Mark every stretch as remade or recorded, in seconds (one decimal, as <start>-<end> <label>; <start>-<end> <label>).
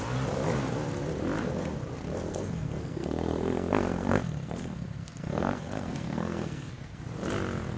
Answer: 0.0-2.3 recorded; 2.3-7.0 remade; 7.0-7.8 recorded